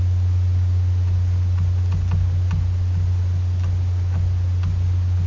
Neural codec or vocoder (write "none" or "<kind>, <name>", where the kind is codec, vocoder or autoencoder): none